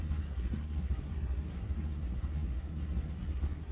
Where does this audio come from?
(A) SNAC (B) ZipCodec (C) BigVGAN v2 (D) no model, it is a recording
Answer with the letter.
A